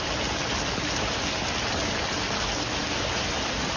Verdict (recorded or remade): recorded